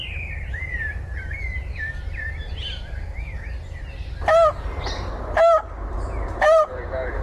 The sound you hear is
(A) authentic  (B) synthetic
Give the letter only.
B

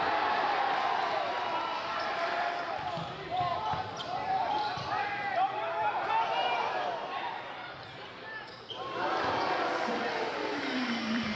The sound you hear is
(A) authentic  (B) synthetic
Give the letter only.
B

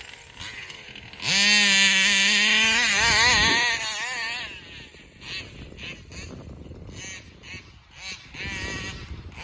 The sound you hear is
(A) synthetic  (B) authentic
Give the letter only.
B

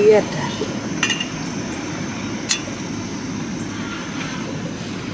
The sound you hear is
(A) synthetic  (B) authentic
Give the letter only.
B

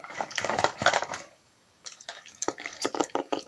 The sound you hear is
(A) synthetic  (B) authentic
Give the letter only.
A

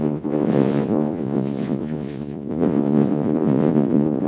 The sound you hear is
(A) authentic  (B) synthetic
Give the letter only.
B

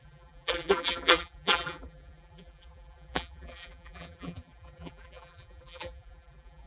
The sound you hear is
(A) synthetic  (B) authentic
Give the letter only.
A